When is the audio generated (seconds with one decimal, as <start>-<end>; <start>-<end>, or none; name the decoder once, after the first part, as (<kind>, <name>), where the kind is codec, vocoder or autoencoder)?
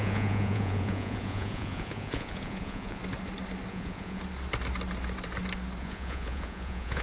0.0-3.0 (vocoder, Vocos); 3.7-4.2; 5.8-7.0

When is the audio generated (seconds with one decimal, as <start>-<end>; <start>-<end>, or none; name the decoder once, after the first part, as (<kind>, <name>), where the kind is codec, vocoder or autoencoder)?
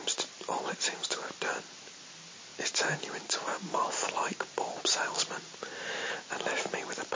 none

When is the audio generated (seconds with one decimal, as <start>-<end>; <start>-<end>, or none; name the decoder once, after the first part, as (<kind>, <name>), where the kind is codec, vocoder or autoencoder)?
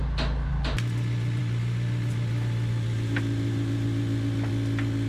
none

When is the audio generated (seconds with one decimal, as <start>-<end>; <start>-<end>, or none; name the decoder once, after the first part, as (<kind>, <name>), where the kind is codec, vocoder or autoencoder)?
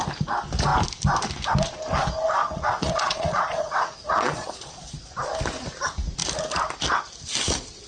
2.4-5.1 (vocoder, Vocos)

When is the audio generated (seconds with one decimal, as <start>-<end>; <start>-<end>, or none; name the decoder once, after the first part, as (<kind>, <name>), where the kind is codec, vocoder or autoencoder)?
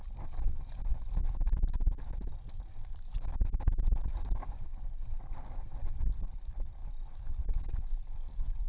0.0-0.9 (vocoder, BigVGAN v2); 2.5-8.7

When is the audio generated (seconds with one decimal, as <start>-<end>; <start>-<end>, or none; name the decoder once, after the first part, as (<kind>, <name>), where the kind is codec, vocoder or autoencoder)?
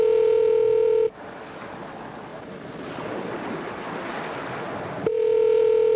2.3-3.8 (vocoder, BigVGAN v2)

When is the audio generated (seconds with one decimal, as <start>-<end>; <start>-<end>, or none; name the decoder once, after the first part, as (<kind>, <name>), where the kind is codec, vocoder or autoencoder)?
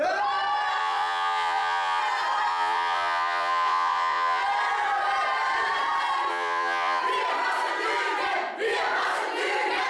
0.8-2.0 (vocoder, Vocos); 2.5-4.4; 6.3-7.0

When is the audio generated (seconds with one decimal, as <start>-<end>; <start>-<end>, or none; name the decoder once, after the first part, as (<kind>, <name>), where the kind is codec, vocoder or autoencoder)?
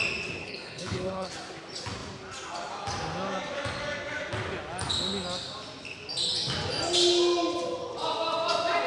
0.4-1.3 (codec, HILCodec)